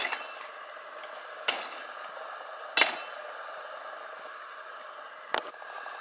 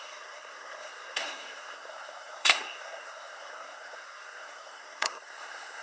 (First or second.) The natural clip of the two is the first